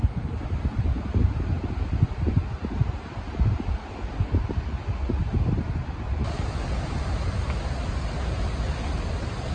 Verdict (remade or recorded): recorded